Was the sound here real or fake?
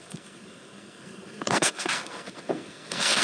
fake